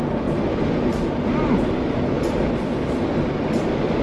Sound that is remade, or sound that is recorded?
recorded